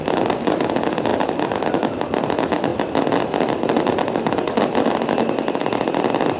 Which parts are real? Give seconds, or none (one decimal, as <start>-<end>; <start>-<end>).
0.0-6.4